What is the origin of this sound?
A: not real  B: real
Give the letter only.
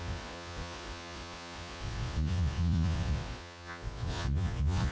A